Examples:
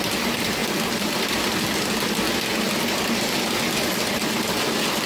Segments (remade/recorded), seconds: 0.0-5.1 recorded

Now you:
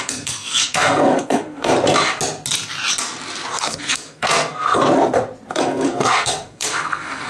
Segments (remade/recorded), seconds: 0.0-1.7 remade; 1.7-3.6 recorded; 3.6-4.8 remade; 4.8-5.5 recorded; 5.5-7.3 remade

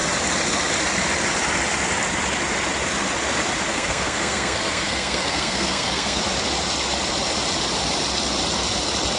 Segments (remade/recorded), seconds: 0.0-3.7 recorded; 3.7-6.2 remade; 6.2-9.2 recorded

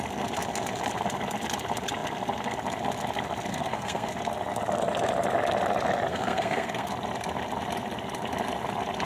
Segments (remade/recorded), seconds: 0.0-3.5 recorded; 3.5-4.1 remade; 4.1-6.1 recorded; 6.1-6.9 remade; 6.9-9.0 recorded

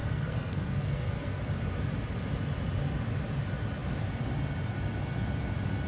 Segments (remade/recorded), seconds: 0.0-1.5 remade; 1.5-5.9 recorded

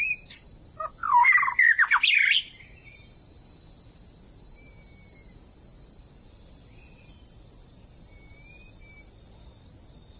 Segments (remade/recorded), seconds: 0.0-10.2 recorded

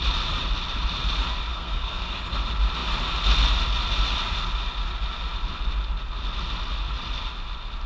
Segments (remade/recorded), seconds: 0.0-1.5 recorded; 1.5-2.1 remade; 2.1-7.9 recorded